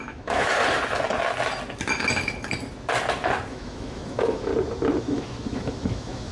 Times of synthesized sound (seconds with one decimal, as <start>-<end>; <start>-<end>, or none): 0.0-0.6; 3.5-4.5; 5.0-6.3